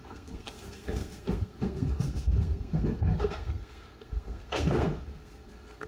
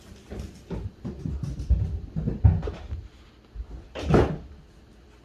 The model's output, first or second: first